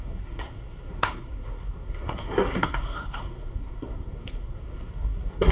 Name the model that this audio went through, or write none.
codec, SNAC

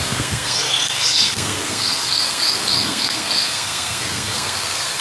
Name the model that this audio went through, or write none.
codec, SNAC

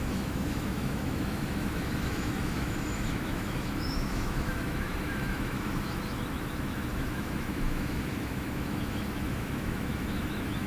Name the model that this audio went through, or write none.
autoencoder, DAC-VAE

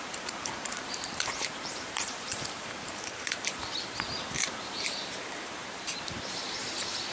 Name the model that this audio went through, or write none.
vocoder, BigVGAN v2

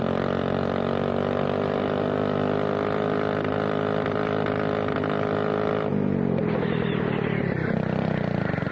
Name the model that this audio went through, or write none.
none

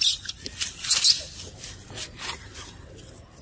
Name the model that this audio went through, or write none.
none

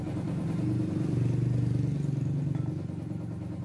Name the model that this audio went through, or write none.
none